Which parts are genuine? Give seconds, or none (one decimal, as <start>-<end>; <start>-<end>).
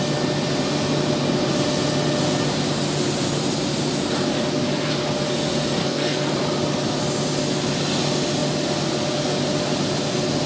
0.0-5.8; 6.3-10.5